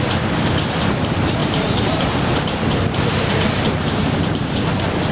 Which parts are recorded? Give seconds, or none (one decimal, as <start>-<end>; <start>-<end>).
0.0-1.4; 4.5-5.1